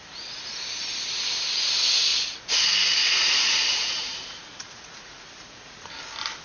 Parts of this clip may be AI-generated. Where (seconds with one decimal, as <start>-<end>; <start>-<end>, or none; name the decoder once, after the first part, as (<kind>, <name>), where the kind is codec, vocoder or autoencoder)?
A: 0.0-0.6 (vocoder, Vocos); 2.1-5.9